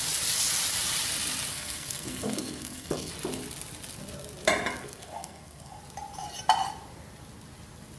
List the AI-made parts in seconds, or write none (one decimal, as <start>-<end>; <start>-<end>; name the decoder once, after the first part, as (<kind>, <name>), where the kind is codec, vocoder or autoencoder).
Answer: 1.5-3.1 (codec, SNAC); 4.8-5.8